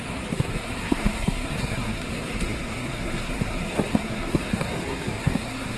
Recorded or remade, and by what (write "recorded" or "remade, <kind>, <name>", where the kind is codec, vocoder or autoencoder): remade, codec, SNAC